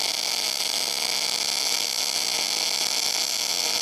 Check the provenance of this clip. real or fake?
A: real